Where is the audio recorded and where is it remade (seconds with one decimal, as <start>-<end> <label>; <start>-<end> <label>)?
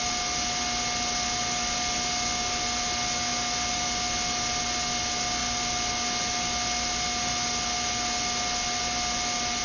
0.0-9.6 recorded